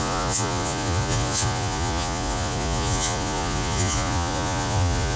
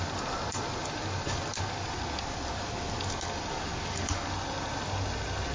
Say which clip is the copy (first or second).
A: first